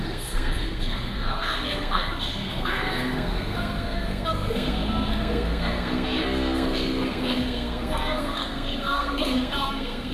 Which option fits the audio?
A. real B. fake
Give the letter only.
B